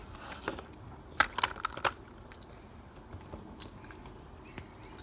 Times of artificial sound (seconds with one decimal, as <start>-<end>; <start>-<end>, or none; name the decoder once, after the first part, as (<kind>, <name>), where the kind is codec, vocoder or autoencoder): none

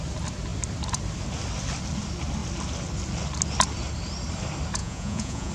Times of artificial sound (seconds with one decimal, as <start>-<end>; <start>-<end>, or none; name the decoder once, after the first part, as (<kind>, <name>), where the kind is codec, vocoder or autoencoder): 4.8-5.5 (vocoder, Vocos)

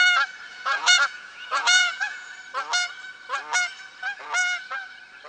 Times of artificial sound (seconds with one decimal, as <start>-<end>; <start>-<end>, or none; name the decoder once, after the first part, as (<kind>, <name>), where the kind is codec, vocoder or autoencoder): 0.5-2.3 (vocoder, Vocos)

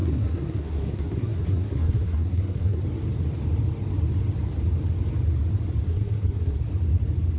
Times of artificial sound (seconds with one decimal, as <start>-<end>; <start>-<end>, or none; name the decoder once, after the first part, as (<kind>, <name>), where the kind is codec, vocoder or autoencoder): 0.0-2.8 (codec, SNAC); 5.9-6.6